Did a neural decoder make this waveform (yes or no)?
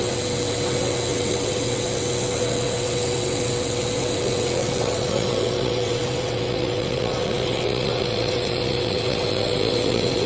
yes